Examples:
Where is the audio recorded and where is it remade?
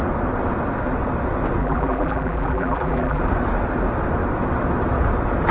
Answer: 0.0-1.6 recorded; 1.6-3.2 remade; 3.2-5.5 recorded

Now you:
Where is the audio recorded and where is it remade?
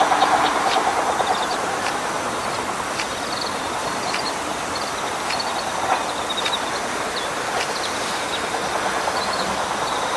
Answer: 0.0-0.5 recorded; 0.5-1.9 remade; 1.9-10.2 recorded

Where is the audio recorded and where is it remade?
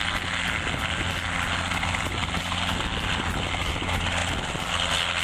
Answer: 0.0-5.2 recorded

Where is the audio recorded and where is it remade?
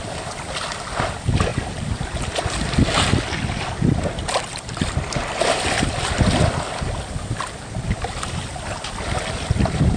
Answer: 0.0-1.5 remade; 1.5-4.5 recorded; 4.5-10.0 remade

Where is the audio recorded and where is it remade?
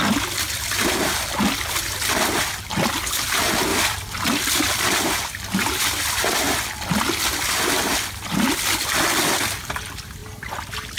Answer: 0.0-3.7 recorded; 3.7-4.9 remade; 4.9-11.0 recorded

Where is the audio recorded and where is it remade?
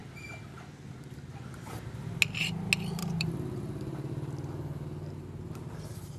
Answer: 0.0-3.0 recorded; 3.0-4.1 remade; 4.1-6.2 recorded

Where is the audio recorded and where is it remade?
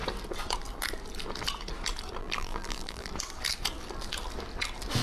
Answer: 0.0-2.2 recorded; 2.2-3.1 remade; 3.1-5.0 recorded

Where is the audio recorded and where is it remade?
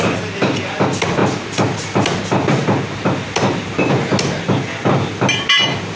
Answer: 0.0-6.0 recorded